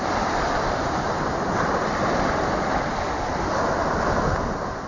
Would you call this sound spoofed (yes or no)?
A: no